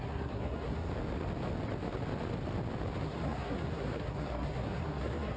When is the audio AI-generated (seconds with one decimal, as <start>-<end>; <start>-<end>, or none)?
0.0-0.9; 3.0-5.4